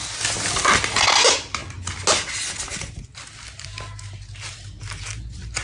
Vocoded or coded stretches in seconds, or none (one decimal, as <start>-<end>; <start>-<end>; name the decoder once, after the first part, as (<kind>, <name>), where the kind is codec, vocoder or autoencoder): none